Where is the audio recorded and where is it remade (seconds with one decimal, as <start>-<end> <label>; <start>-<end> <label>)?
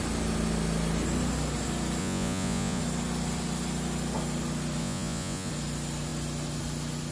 0.0-2.0 recorded; 2.0-2.8 remade; 2.8-4.8 recorded; 4.8-5.5 remade; 5.5-7.1 recorded